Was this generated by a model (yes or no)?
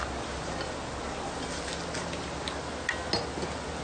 no